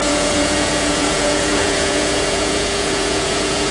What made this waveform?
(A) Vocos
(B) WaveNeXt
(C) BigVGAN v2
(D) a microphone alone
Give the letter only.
A